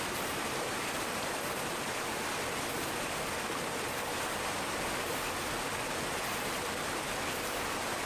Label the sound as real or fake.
real